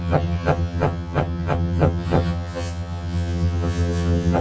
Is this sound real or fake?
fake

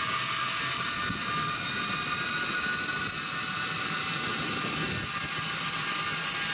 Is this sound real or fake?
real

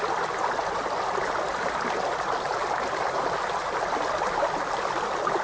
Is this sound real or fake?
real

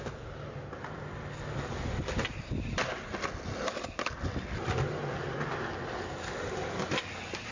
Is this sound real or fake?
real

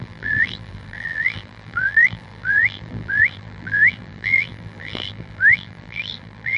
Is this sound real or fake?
fake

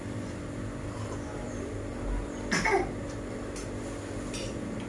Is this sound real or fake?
real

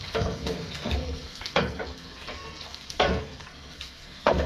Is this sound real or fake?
fake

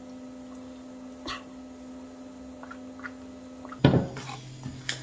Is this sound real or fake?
real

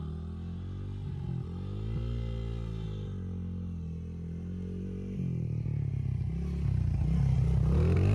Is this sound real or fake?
real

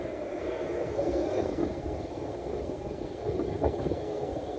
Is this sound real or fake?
fake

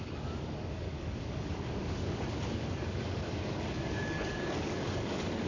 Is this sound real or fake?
fake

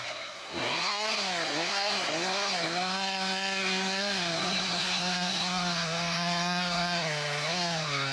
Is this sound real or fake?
fake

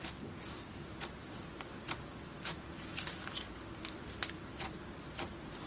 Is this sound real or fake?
real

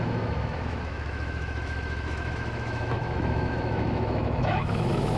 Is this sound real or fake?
fake